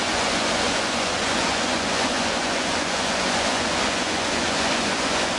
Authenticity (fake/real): fake